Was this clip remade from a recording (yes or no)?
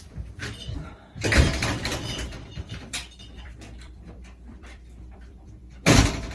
yes